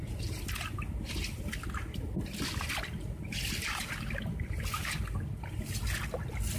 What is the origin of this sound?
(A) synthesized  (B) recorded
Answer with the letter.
B